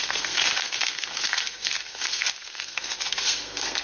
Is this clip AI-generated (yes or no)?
yes